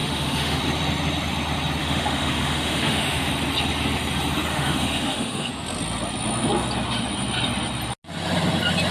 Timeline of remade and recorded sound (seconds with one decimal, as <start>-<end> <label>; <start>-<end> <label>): 0.0-0.6 remade; 0.6-1.8 recorded; 1.8-3.3 remade; 3.3-4.5 recorded; 4.5-5.5 remade; 5.5-8.9 recorded